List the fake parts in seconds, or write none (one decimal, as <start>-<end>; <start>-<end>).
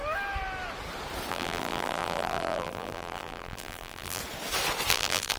1.3-4.2; 4.9-5.4